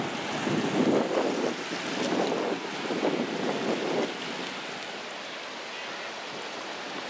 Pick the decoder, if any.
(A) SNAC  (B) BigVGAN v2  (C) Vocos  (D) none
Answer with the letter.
D